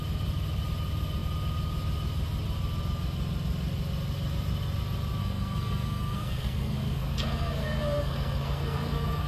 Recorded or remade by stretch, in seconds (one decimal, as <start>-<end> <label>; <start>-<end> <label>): 0.0-5.2 recorded; 5.2-9.3 remade

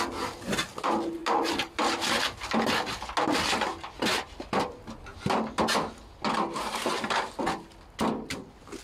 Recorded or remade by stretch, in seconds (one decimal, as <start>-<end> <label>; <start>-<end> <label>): 0.0-8.8 recorded

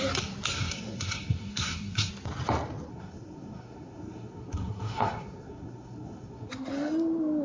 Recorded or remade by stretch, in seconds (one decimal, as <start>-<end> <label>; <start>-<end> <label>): 0.0-0.5 recorded; 0.5-2.1 remade; 2.1-2.9 recorded; 2.9-6.5 remade; 6.5-7.4 recorded

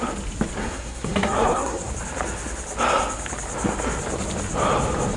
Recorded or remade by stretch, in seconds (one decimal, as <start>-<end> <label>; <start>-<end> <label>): 0.0-0.6 recorded; 0.6-1.9 remade; 1.9-5.2 recorded

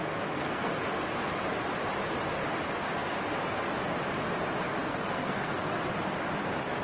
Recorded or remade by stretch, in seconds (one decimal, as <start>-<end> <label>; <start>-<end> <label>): 0.0-0.7 remade; 0.7-4.8 recorded; 4.8-5.8 remade; 5.8-6.8 recorded

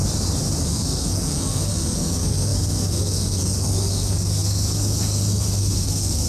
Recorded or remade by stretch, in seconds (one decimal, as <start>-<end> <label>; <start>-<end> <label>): 0.0-0.6 recorded; 0.6-6.3 remade